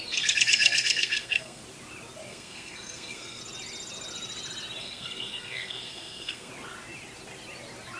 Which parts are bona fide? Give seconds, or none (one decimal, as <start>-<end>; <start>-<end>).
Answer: 1.6-2.3; 3.4-4.8; 6.5-8.0